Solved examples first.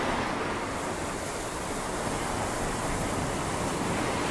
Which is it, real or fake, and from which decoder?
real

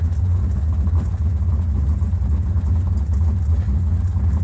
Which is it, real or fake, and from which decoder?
real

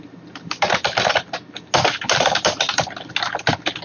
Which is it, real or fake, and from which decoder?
real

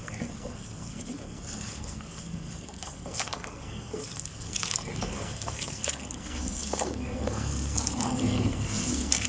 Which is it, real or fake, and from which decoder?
fake, codec, SNAC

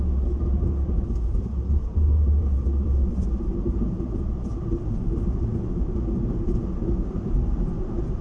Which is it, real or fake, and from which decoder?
real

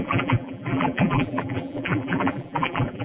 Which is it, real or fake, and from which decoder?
fake, vocoder, BigVGAN v2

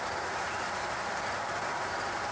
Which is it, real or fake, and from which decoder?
fake, vocoder, BigVGAN v2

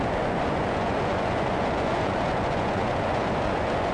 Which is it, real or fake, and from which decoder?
fake, vocoder, Vocos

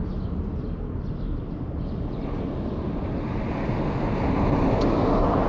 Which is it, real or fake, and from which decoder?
real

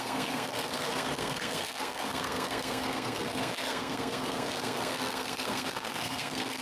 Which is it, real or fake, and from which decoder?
fake, codec, SNAC